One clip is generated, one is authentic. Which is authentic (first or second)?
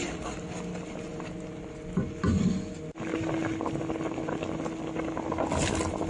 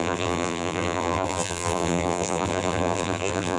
first